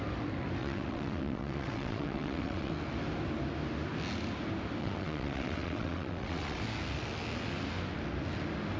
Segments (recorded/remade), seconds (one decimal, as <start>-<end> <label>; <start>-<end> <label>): 0.0-0.6 recorded; 0.6-2.7 remade; 2.7-4.8 recorded; 4.8-6.6 remade; 6.6-8.8 recorded

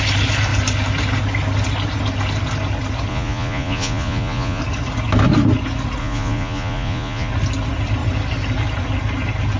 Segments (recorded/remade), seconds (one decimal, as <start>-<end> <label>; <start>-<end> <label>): 0.0-3.1 recorded; 3.1-4.6 remade; 4.6-6.0 recorded; 6.0-7.3 remade; 7.3-9.6 recorded

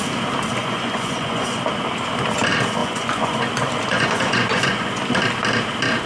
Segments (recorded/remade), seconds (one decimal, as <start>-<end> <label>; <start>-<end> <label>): 0.0-0.6 recorded; 0.6-1.6 remade; 1.6-2.8 recorded; 2.8-3.4 remade; 3.4-3.9 recorded; 3.9-5.0 remade; 5.0-6.1 recorded

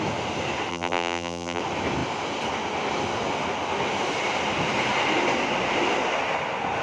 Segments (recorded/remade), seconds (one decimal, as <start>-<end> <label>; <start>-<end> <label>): 0.0-0.7 recorded; 0.7-1.6 remade; 1.6-6.8 recorded

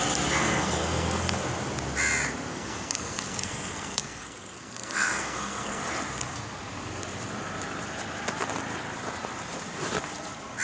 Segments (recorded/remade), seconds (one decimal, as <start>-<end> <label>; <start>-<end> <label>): 0.0-0.4 recorded; 0.4-1.4 remade; 1.4-2.5 recorded; 2.5-5.8 remade; 5.8-10.6 recorded

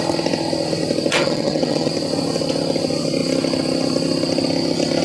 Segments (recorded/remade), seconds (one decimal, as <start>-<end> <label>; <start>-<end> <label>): 0.0-1.1 recorded; 1.1-1.9 remade; 1.9-5.0 recorded

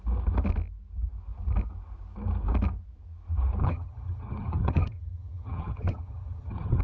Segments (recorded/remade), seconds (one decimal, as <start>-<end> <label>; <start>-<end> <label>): 0.0-3.6 recorded; 3.6-6.8 remade